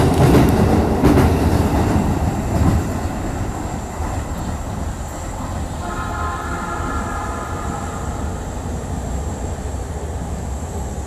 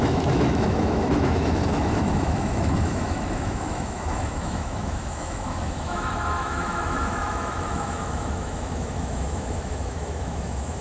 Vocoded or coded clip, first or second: second